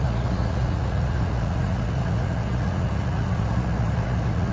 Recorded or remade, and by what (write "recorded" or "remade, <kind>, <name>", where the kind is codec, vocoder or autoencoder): remade, vocoder, Vocos